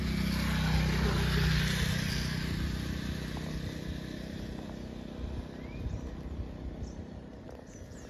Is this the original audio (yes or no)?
yes